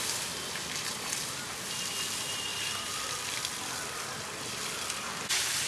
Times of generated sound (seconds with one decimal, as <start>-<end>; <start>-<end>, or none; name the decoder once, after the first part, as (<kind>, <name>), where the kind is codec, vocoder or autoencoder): 2.5-5.1 (vocoder, BigVGAN v2)